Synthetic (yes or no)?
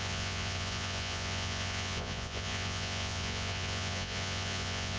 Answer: yes